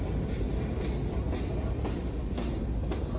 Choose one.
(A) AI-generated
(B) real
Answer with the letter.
B